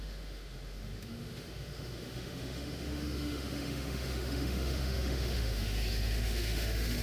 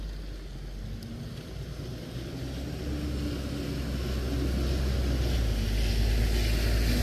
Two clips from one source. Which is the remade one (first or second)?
first